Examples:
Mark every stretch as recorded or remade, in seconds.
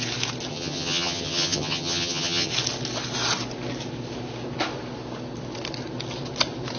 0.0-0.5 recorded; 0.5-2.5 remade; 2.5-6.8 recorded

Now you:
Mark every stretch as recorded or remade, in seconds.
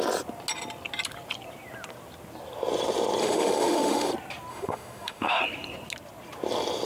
0.0-3.2 recorded; 3.2-4.1 remade; 4.1-4.5 recorded; 4.5-5.4 remade; 5.4-6.9 recorded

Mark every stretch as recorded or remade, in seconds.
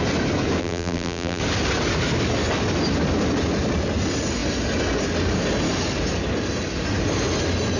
0.0-0.6 recorded; 0.6-1.4 remade; 1.4-7.8 recorded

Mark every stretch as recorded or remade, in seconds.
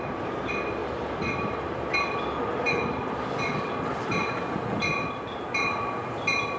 0.0-0.8 recorded; 0.8-4.8 remade; 4.8-6.6 recorded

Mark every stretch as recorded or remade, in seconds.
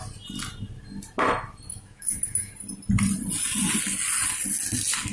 0.0-1.7 recorded; 1.7-2.5 remade; 2.5-5.1 recorded